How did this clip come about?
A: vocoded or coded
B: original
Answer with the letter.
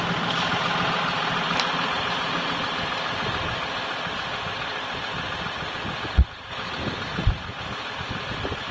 B